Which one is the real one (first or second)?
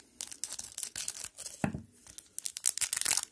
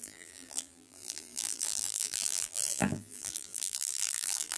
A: first